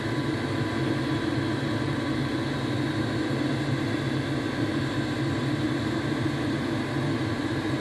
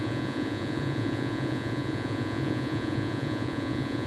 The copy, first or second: second